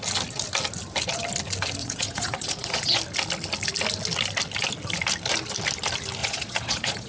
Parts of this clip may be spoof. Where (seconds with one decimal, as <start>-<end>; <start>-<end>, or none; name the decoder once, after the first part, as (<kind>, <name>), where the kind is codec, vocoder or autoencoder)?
1.8-3.0 (vocoder, Vocos); 6.2-7.1